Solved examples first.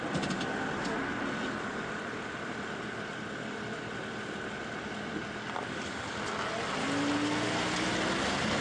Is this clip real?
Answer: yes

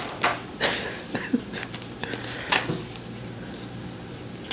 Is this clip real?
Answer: yes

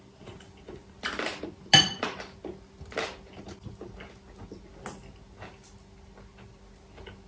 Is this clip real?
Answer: yes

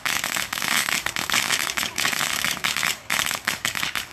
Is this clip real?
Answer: no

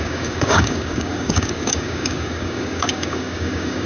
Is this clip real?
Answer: no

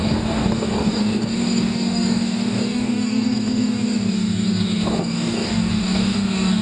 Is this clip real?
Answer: no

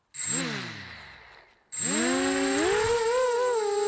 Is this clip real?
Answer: yes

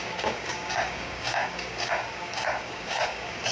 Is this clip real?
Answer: no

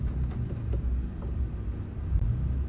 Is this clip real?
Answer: yes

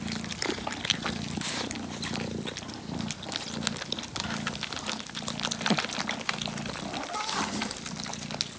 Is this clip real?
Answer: yes